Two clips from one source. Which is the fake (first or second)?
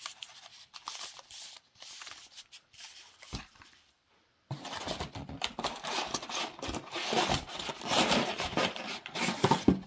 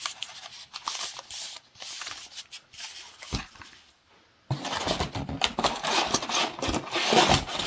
first